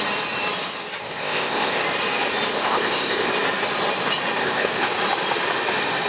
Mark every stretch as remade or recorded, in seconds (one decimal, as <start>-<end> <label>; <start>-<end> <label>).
0.0-1.0 recorded; 1.0-1.8 remade; 1.8-2.5 recorded; 2.5-3.3 remade; 3.3-4.4 recorded; 4.4-4.9 remade; 4.9-6.1 recorded